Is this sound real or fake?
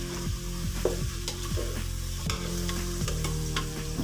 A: fake